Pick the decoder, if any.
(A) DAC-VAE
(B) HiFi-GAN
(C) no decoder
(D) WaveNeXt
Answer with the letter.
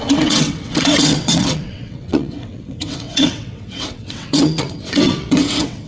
D